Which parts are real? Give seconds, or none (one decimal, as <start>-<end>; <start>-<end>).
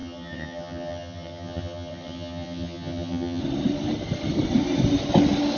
3.4-5.6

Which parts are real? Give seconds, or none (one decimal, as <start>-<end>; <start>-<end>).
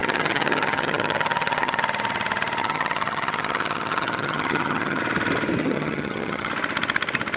1.8-2.6; 5.0-5.6; 6.5-7.4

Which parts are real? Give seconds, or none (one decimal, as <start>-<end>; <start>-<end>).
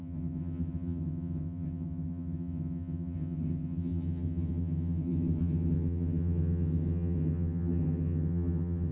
none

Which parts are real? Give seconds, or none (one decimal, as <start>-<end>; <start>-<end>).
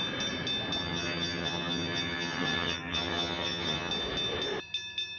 0.0-0.8; 3.9-5.2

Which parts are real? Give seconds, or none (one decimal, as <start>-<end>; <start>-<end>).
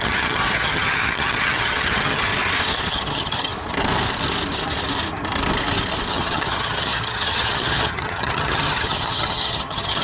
2.3-2.9; 3.5-6.1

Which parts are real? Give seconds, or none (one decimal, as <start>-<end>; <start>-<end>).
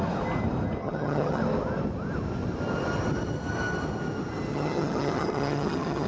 0.0-0.8; 1.4-4.5